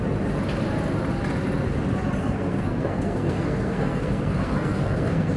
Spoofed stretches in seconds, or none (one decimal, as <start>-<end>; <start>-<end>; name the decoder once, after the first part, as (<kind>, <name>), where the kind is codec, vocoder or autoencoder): 2.2-5.4 (codec, SNAC)